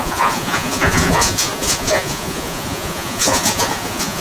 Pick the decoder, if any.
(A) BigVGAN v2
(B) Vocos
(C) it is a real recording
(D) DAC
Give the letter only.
B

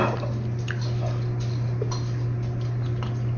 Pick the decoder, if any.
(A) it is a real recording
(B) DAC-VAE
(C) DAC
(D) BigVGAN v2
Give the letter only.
A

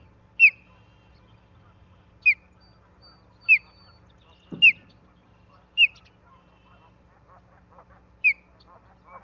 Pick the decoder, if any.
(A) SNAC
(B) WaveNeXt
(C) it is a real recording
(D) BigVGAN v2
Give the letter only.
C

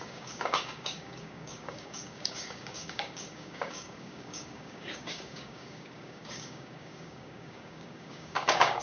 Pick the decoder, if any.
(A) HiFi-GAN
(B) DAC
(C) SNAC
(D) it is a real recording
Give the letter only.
B